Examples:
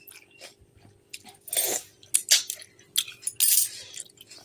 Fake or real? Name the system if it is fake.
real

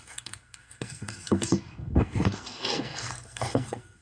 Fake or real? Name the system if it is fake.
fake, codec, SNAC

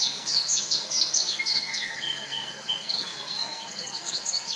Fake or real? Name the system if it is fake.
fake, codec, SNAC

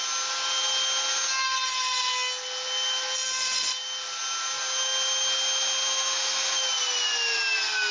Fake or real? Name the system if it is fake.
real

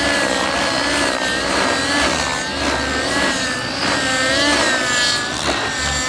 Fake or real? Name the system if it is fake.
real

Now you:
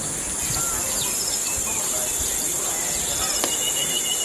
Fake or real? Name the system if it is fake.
real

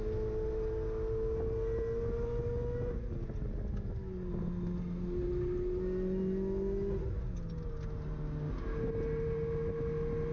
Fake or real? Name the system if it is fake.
real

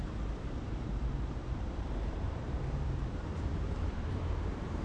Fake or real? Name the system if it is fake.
fake, vocoder, BigVGAN v2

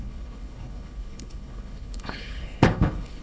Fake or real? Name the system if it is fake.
fake, codec, HILCodec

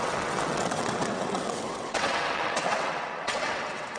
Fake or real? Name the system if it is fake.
fake, vocoder, WaveNeXt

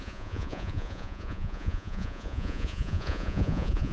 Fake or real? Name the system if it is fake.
fake, vocoder, Vocos